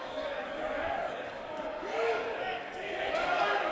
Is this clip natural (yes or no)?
no